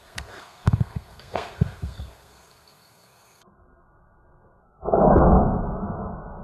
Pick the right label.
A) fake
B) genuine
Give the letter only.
A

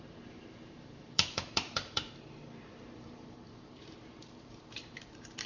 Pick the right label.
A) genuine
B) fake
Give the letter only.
B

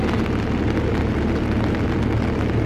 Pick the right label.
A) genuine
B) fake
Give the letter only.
A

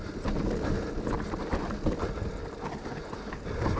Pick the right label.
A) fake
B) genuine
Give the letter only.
B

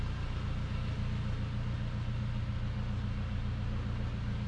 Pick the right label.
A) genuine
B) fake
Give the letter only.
A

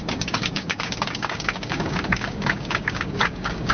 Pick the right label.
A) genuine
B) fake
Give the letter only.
B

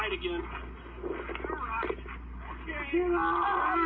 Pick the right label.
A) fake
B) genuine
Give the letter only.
B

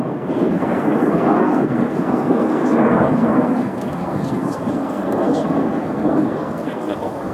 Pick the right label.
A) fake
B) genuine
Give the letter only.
A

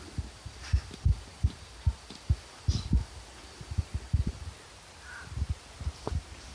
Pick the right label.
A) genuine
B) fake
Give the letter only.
A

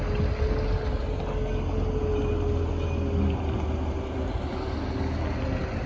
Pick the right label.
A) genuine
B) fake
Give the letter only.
A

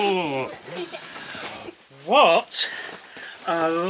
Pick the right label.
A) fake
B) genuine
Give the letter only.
B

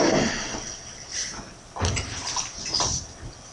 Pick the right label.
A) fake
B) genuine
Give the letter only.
B